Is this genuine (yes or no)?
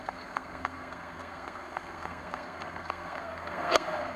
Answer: no